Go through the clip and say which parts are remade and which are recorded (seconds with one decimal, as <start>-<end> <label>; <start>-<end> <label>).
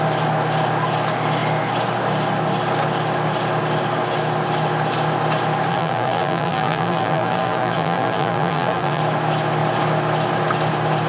0.0-5.7 recorded; 5.7-9.0 remade; 9.0-11.1 recorded